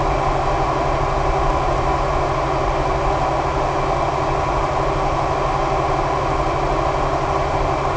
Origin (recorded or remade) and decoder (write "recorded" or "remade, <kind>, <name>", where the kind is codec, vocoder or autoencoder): recorded